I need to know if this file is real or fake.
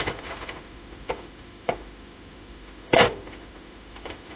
fake